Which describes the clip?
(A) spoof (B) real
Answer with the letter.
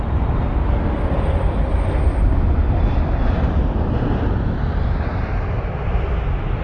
B